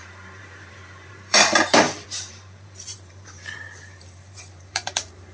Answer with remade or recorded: remade